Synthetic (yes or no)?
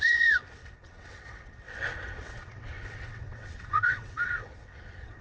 yes